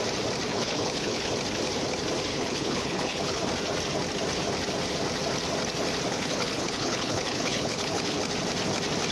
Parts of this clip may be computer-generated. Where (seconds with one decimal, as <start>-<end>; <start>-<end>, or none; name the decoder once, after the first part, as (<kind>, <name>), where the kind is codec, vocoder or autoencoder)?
0.5-1.3 (codec, HILCodec); 2.3-3.4; 6.1-8.2